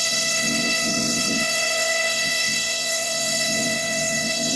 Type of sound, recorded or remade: remade